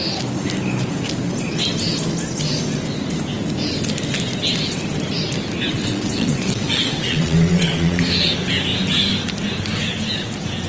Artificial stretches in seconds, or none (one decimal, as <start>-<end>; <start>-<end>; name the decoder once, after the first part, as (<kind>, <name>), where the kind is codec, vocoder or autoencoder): 5.7-8.0 (vocoder, WaveNeXt)